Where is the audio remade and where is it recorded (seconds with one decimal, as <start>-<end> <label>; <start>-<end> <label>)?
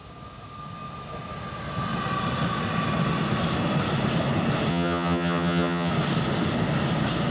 0.0-4.7 recorded; 4.7-5.9 remade; 5.9-7.3 recorded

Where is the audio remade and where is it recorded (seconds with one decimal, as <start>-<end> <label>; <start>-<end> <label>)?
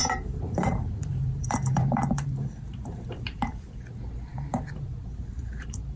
0.0-3.6 remade; 3.6-4.3 recorded; 4.3-6.0 remade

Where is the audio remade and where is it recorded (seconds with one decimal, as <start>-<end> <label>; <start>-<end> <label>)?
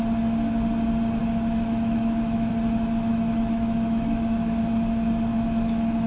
0.0-1.2 recorded; 1.2-2.5 remade; 2.5-3.1 recorded; 3.1-4.6 remade; 4.6-5.3 recorded; 5.3-6.1 remade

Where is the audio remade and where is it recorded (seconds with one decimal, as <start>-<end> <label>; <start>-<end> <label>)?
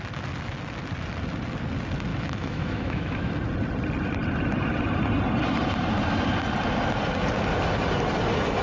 0.0-2.1 recorded; 2.1-3.3 remade; 3.3-8.6 recorded